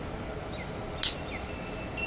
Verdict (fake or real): real